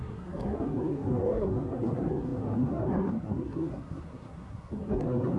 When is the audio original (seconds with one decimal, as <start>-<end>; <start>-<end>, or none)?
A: none